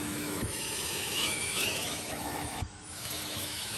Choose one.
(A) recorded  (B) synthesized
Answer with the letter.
B